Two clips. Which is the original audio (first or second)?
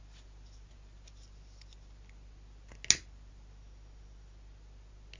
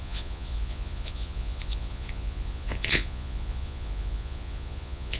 first